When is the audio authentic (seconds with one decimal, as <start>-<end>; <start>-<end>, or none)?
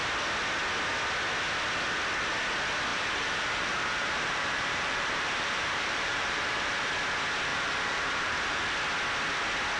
0.0-2.9; 6.9-7.5; 8.6-9.8